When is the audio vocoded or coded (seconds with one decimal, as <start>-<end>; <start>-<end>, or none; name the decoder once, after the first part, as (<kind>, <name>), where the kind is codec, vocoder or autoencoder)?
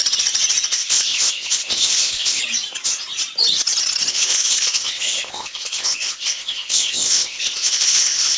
0.7-2.4 (codec, ZipCodec); 4.1-8.4